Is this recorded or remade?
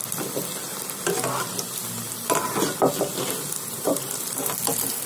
recorded